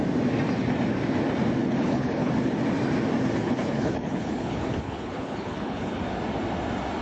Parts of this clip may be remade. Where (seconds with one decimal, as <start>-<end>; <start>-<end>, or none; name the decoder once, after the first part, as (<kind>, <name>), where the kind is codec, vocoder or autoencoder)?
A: 1.6-2.3 (codec, HILCodec); 3.4-6.0